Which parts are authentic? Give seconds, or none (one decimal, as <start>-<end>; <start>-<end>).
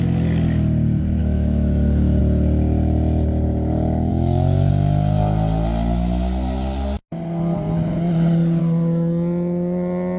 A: 0.0-1.2; 2.2-4.1; 4.7-10.2